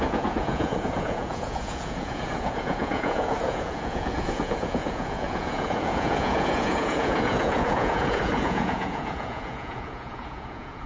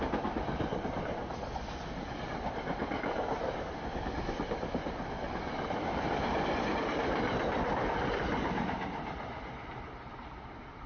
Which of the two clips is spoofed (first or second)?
first